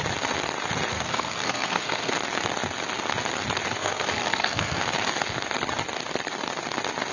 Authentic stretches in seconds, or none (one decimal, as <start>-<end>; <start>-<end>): 0.0-0.9; 2.1-3.8; 4.8-7.1